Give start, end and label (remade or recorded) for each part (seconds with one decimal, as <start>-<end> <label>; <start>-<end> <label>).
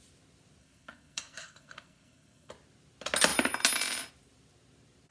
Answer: 0.0-0.6 recorded; 0.6-2.5 remade; 2.5-5.1 recorded